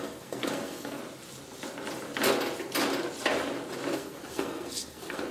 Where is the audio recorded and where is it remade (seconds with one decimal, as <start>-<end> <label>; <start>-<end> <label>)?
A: 0.0-1.0 remade; 1.0-3.9 recorded; 3.9-5.3 remade